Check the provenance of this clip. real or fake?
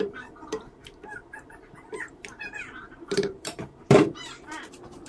fake